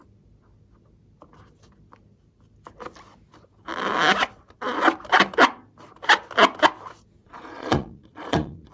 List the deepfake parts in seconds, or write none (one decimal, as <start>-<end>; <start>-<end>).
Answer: 7.2-8.7